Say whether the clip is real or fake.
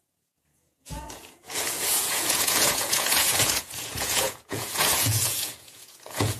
fake